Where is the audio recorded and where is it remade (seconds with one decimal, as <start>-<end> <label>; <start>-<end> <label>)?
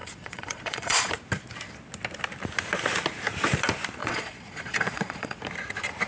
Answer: 0.0-1.1 remade; 1.1-4.0 recorded; 4.0-5.4 remade; 5.4-6.1 recorded